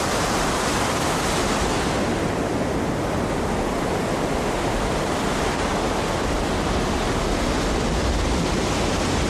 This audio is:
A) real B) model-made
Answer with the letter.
A